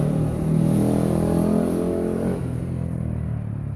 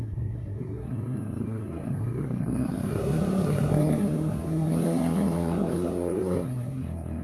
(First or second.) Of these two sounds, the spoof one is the second